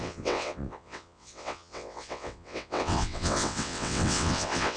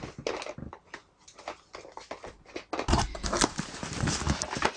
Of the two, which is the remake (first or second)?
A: first